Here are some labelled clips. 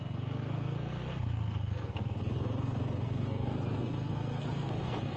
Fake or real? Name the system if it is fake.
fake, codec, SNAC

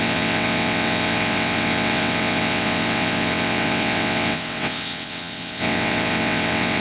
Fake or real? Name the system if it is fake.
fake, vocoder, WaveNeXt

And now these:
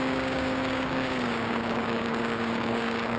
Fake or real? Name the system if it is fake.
fake, codec, DAC